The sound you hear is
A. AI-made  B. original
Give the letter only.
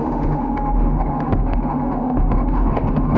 A